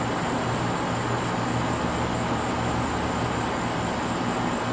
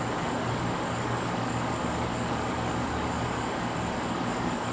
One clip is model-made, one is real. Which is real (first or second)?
first